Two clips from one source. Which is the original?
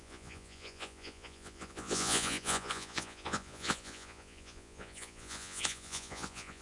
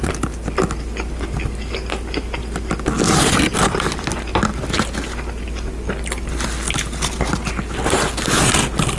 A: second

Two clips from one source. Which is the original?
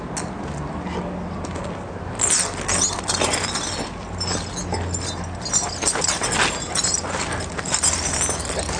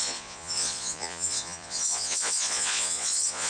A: first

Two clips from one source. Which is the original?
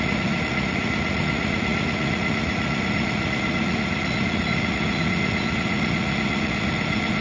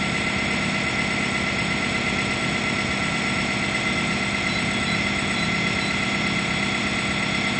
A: second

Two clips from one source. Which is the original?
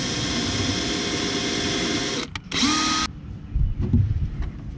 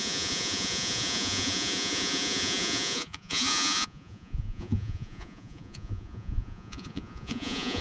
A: first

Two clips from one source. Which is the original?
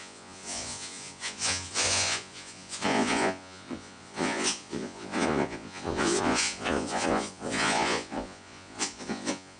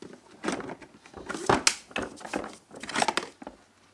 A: second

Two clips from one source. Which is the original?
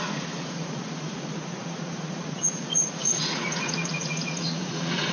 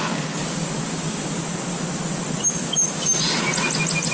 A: second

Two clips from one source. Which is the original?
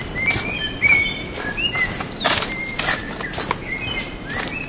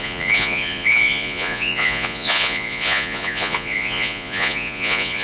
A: first